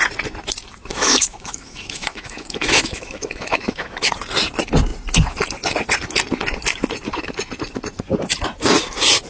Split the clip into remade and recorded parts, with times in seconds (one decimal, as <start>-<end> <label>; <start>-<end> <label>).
0.0-0.9 recorded; 0.9-4.1 remade; 4.1-9.3 recorded